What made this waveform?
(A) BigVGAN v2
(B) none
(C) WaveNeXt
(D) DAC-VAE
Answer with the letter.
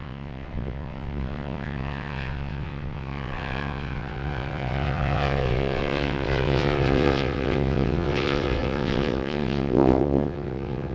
C